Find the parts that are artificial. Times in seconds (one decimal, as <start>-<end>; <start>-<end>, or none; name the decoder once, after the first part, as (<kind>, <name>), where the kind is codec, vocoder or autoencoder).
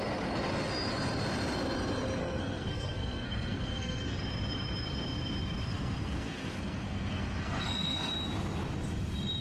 2.2-4.2 (codec, SNAC); 5.7-8.1